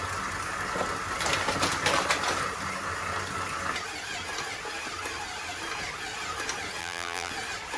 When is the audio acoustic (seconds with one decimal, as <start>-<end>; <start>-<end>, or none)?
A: 0.0-6.8; 7.3-7.8